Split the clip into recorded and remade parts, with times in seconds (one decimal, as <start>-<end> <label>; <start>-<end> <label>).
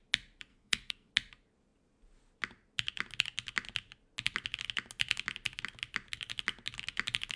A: 0.0-0.5 recorded; 0.5-1.1 remade; 1.1-7.4 recorded